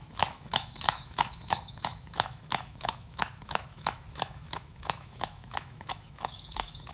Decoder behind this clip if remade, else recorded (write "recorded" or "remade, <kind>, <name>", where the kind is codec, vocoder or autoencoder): remade, autoencoder, DAC-VAE